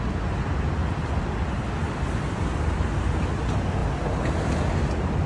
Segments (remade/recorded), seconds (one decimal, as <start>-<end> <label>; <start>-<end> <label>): 0.0-5.3 recorded